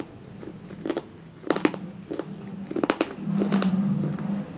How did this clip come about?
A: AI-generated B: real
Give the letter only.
B